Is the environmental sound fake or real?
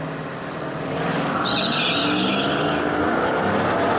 real